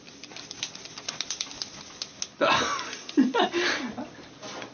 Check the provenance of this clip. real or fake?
real